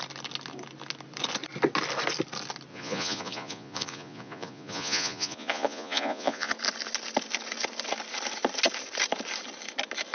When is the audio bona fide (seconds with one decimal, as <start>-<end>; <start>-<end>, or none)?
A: 0.0-2.7; 6.5-10.1